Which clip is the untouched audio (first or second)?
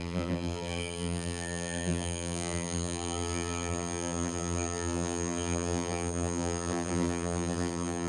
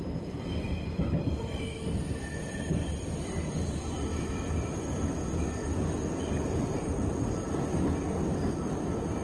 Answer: second